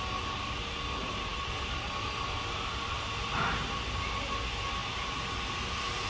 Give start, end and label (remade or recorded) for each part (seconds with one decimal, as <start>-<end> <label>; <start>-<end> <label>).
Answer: 0.0-6.1 recorded